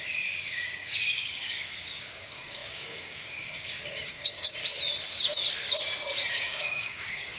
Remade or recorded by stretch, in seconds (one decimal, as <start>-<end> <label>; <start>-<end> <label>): 0.0-4.6 remade; 4.6-6.3 recorded; 6.3-7.4 remade

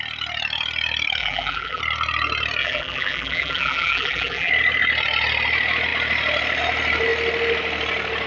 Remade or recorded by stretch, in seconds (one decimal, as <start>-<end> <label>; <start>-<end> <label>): 0.0-1.2 recorded; 1.2-1.8 remade; 1.8-2.6 recorded; 2.6-4.5 remade; 4.5-8.3 recorded

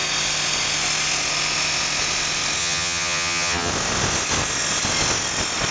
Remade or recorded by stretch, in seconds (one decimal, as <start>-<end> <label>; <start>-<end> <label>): 0.0-2.6 recorded; 2.6-3.7 remade; 3.7-5.7 recorded

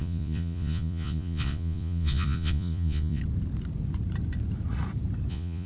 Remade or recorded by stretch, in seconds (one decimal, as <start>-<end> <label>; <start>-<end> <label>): 0.0-3.2 remade; 3.2-5.3 recorded; 5.3-5.7 remade